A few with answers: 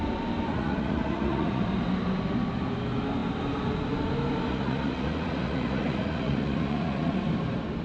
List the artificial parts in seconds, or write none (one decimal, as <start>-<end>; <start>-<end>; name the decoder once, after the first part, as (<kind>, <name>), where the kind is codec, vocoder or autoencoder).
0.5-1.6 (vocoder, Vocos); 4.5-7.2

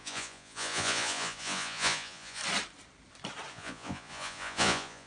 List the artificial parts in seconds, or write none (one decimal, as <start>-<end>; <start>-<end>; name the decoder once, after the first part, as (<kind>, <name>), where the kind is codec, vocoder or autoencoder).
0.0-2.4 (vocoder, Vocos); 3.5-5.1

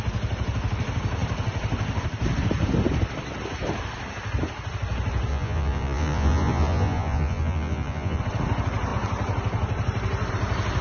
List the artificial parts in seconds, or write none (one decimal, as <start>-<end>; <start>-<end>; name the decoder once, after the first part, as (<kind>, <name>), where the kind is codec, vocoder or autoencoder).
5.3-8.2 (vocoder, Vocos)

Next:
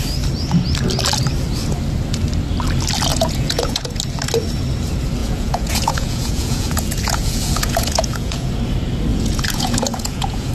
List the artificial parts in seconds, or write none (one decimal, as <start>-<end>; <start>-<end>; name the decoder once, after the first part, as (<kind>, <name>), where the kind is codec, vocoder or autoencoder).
3.1-4.0 (vocoder, Vocos); 5.2-8.5; 9.1-10.5

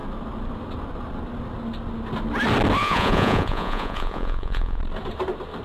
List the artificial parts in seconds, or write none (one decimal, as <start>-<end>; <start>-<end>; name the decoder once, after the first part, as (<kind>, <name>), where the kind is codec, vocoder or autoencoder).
2.8-4.8 (vocoder, Vocos)

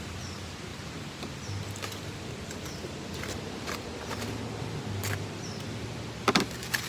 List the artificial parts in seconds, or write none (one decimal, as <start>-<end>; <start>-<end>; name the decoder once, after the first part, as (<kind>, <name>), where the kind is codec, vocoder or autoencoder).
none

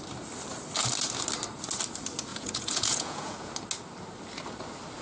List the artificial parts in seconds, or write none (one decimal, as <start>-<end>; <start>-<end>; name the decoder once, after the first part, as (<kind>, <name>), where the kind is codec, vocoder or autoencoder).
2.3-3.5 (vocoder, Vocos)

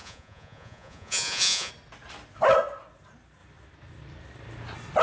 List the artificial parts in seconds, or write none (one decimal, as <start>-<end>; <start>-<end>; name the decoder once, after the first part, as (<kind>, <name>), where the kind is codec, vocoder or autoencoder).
0.0-1.7 (vocoder, Vocos)